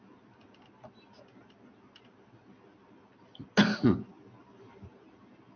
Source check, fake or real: real